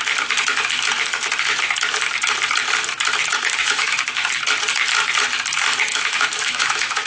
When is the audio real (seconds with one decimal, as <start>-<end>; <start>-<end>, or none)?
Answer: 0.0-3.3; 4.1-5.9

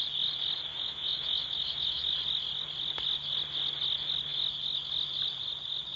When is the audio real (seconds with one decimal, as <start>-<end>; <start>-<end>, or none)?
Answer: 0.0-0.7; 2.1-6.0

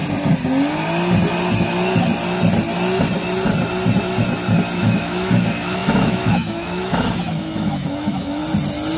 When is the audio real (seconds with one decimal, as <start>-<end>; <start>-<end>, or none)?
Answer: 0.0-4.8; 8.4-9.0